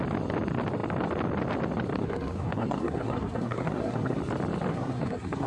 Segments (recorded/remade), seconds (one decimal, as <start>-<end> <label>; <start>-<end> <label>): 0.0-2.0 recorded; 2.0-4.2 remade; 4.2-4.7 recorded; 4.7-5.5 remade